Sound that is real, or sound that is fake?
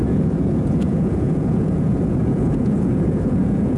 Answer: fake